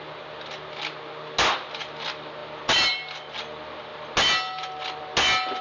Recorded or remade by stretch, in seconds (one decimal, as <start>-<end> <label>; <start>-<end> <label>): 0.0-5.6 recorded

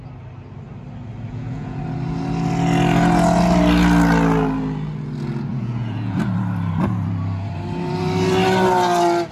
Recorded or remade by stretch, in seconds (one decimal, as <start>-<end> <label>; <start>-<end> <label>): 0.0-1.3 recorded; 1.3-1.8 remade; 1.8-5.5 recorded; 5.5-6.2 remade; 6.2-9.3 recorded

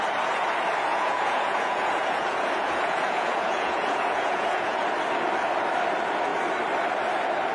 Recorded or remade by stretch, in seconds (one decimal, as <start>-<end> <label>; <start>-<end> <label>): 0.0-0.9 recorded; 0.9-4.8 remade; 4.8-7.5 recorded

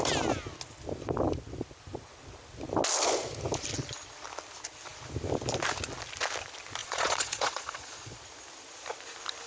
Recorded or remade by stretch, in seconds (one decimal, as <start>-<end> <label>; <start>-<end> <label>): 0.0-6.8 recorded; 6.8-8.2 remade; 8.2-9.5 recorded

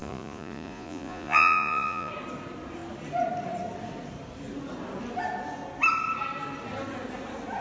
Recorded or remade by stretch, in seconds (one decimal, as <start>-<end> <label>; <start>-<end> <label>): 0.0-2.1 remade; 2.1-7.6 recorded

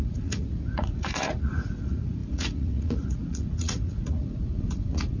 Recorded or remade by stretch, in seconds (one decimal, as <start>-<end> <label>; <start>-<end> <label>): 0.0-5.2 remade

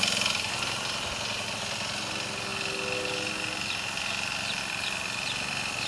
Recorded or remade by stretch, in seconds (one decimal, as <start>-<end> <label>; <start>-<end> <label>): 0.0-5.9 recorded